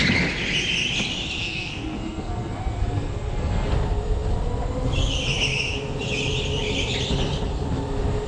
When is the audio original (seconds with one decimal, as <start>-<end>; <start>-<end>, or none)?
0.0-1.4; 3.7-8.3

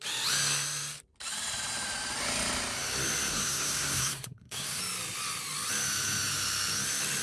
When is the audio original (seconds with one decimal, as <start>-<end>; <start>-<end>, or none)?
0.0-3.3; 4.8-7.2